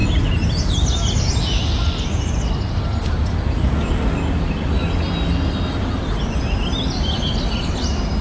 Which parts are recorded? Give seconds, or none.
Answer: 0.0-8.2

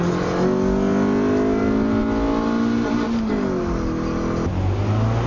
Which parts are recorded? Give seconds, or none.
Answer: 0.0-5.3

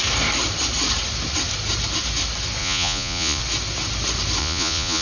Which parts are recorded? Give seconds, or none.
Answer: 0.0-2.6; 3.4-4.4

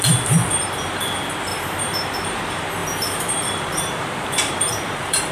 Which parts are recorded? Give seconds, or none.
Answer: 0.0-1.5; 2.4-2.8

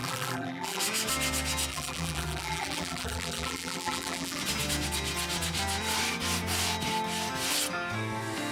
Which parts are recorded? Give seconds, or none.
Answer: 0.8-1.7; 4.4-8.5